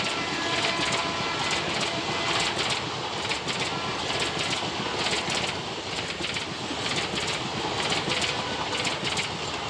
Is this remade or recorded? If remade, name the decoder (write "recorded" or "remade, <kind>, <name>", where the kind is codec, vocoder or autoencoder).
recorded